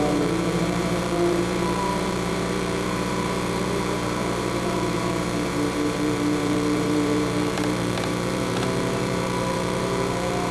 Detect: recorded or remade remade